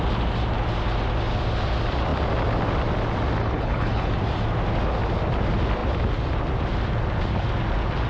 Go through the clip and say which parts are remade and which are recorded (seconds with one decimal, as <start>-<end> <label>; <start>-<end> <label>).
0.0-3.4 recorded; 3.4-4.1 remade; 4.1-8.1 recorded

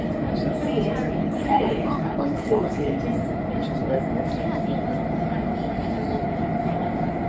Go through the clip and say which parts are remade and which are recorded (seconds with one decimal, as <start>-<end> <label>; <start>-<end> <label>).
0.0-1.2 recorded; 1.2-3.0 remade; 3.0-7.3 recorded

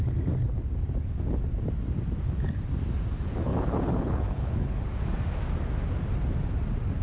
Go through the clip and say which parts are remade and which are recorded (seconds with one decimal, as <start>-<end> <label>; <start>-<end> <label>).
0.0-3.5 recorded; 3.5-4.8 remade; 4.8-7.0 recorded

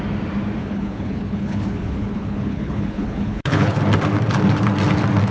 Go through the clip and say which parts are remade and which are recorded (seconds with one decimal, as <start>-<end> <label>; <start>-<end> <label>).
0.0-0.6 recorded; 0.6-3.8 remade; 3.8-5.3 recorded

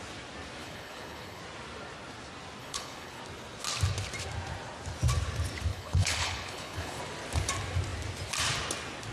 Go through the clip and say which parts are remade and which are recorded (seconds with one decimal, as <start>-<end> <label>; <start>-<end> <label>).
0.0-0.6 recorded; 0.6-1.4 remade; 1.4-2.6 recorded; 2.6-3.2 remade; 3.2-5.7 recorded; 5.7-7.0 remade; 7.0-9.1 recorded